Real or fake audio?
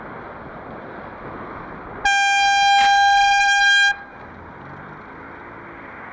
real